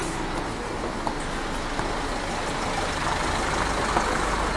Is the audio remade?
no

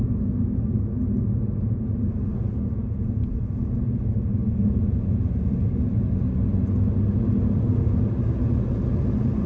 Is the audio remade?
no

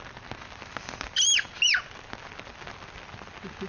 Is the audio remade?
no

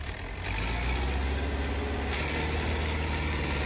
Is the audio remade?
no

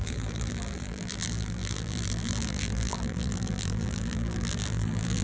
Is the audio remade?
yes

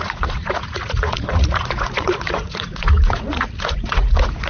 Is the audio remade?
yes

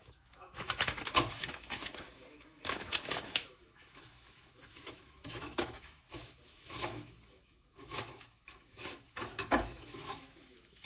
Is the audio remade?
yes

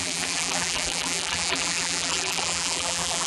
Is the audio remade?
yes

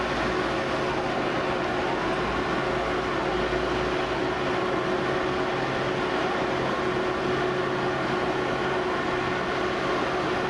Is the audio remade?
no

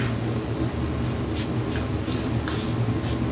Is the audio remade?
no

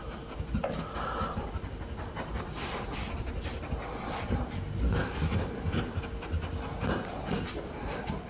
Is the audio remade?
no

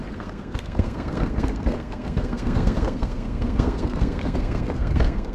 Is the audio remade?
yes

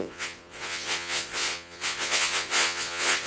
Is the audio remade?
yes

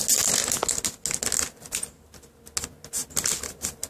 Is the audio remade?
no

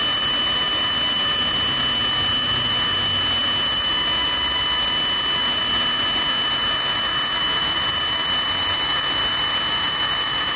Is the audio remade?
no